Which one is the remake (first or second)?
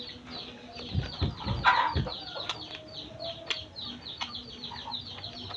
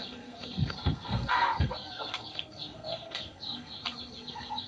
second